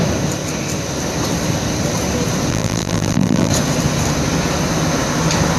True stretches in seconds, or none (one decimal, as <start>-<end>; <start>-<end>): 0.0-2.5; 3.5-5.6